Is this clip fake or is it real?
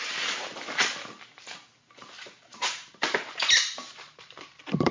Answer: fake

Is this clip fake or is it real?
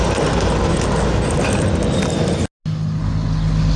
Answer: real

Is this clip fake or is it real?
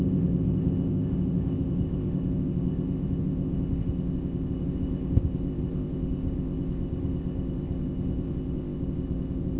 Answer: fake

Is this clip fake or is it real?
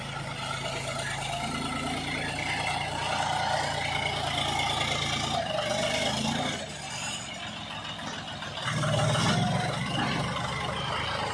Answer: real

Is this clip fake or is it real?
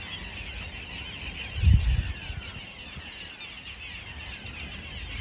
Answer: real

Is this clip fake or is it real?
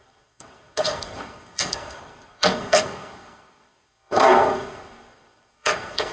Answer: fake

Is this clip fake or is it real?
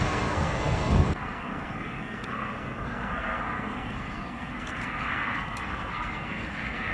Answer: fake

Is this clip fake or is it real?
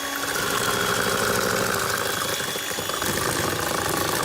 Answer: real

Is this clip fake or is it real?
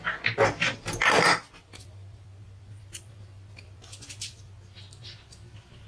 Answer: fake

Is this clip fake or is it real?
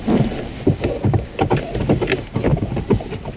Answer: real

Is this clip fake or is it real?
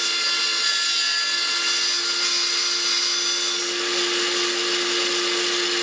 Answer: real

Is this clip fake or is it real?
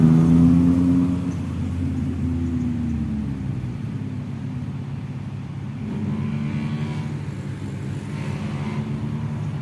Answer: real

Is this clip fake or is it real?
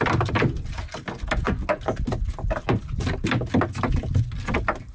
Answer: real